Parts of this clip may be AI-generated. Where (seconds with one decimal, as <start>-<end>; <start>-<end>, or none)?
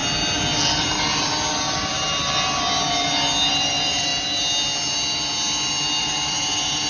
3.5-4.1; 6.0-6.9